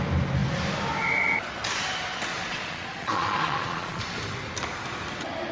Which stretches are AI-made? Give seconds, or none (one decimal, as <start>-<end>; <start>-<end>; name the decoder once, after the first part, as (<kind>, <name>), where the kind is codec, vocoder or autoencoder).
2.3-4.0 (vocoder, Vocos)

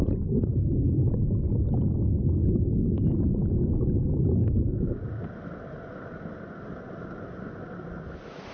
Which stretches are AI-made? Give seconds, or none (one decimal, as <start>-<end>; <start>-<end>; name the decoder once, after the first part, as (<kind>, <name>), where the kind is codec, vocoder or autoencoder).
none

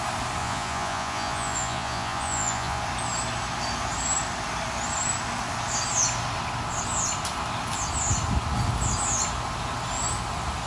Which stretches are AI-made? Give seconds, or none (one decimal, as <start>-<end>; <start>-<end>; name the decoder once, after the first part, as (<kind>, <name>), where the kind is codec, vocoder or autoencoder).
0.4-2.8 (vocoder, Vocos)

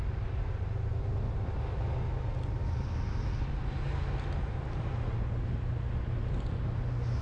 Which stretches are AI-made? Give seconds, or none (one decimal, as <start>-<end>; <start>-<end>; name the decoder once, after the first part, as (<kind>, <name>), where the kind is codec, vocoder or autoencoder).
none